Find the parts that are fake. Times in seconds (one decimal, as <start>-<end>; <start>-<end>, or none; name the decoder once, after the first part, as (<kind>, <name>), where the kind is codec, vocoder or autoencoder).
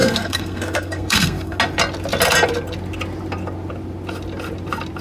0.0-1.6 (codec, SNAC)